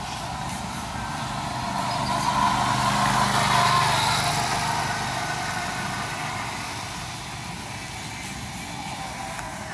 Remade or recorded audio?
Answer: recorded